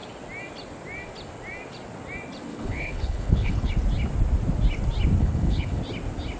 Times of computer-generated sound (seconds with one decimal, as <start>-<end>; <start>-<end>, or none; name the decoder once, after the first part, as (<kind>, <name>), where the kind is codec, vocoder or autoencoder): 2.5-3.7 (codec, HILCodec); 5.2-5.8